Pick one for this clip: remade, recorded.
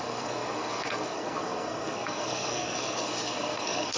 remade